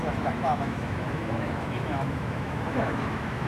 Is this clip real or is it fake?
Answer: fake